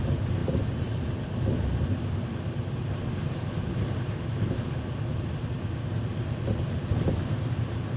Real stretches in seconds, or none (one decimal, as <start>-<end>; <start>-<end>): 0.0-8.0